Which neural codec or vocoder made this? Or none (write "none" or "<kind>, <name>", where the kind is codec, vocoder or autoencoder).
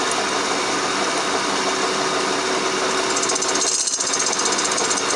none